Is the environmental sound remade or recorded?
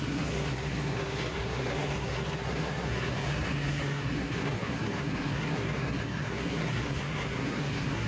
remade